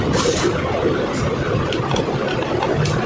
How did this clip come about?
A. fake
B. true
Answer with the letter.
B